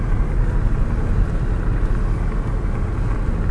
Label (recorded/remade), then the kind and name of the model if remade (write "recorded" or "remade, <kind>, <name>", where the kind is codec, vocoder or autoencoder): recorded